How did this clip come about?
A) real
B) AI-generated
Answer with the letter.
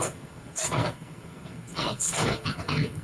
B